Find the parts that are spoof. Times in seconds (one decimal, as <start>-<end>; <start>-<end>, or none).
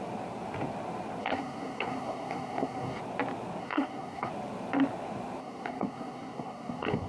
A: 1.2-3.0; 3.6-4.3; 5.4-7.1